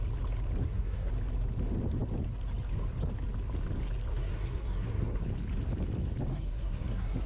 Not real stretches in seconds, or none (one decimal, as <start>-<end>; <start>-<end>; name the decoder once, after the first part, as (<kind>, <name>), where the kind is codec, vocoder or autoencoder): 0.6-1.1 (codec, SNAC); 4.1-5.2; 6.3-7.3